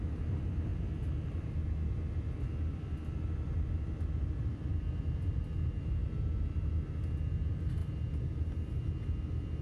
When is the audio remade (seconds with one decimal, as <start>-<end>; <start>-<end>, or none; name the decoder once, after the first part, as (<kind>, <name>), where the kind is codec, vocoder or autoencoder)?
none